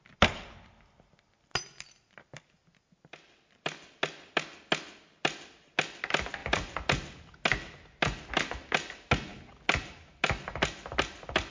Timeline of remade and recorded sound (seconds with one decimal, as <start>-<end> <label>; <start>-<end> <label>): 0.0-11.5 recorded